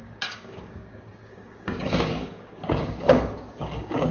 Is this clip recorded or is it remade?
remade